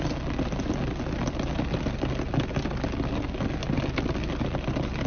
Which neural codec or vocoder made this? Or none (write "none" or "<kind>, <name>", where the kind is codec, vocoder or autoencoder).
none